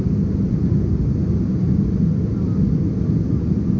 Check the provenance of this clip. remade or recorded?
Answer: recorded